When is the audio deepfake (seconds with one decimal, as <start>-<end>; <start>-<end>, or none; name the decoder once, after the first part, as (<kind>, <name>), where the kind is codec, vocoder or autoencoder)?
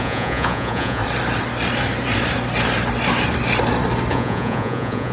0.0-1.0 (vocoder, Vocos); 4.1-5.1